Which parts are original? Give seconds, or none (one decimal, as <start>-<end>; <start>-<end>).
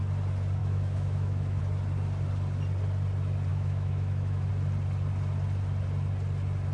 0.0-0.6; 1.6-3.5; 4.5-6.7